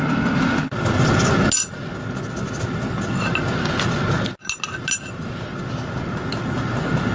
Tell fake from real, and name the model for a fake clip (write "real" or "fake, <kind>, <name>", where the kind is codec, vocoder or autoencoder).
real